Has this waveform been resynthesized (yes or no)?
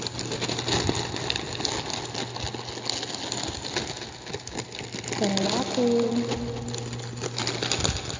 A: no